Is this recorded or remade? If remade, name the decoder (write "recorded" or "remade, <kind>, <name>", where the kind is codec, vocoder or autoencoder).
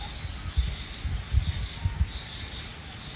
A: recorded